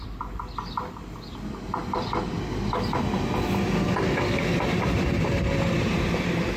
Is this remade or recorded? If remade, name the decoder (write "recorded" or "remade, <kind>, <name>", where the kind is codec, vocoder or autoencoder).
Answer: recorded